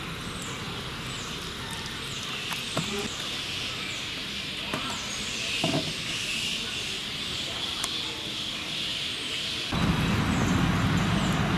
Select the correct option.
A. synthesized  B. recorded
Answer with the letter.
B